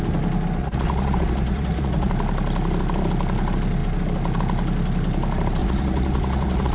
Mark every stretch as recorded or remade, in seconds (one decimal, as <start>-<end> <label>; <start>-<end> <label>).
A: 0.0-0.6 recorded; 0.6-2.1 remade; 2.1-5.6 recorded; 5.6-6.7 remade